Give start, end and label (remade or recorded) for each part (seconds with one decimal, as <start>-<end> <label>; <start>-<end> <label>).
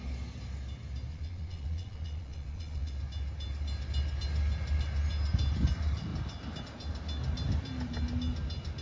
0.0-1.1 recorded; 1.1-2.9 remade; 2.9-8.8 recorded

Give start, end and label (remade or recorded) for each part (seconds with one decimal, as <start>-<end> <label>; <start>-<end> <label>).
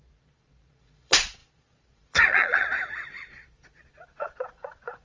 0.0-5.0 remade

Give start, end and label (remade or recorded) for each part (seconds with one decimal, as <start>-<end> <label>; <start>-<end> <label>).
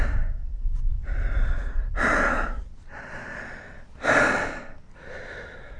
0.0-5.8 recorded